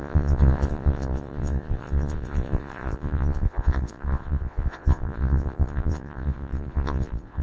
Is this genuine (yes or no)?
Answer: no